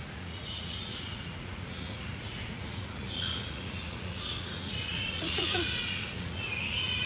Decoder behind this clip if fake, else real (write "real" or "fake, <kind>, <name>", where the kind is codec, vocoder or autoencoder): fake, vocoder, Vocos